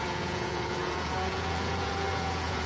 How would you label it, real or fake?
fake